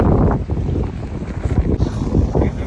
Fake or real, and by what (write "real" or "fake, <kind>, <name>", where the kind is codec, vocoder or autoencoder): real